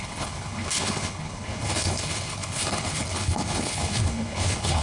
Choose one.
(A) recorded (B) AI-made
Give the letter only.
B